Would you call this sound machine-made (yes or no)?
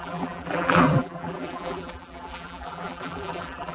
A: yes